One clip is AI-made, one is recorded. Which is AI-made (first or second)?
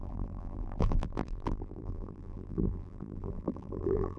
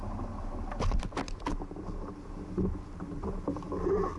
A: first